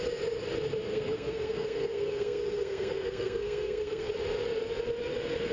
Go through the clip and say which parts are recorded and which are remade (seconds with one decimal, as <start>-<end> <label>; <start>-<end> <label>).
0.0-0.9 recorded; 0.9-4.1 remade; 4.1-5.5 recorded

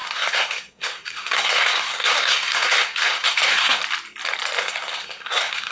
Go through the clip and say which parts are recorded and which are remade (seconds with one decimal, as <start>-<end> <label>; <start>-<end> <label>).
0.0-3.8 remade; 3.8-4.6 recorded; 4.6-5.7 remade